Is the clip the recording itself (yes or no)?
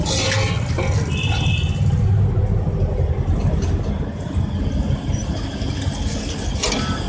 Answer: yes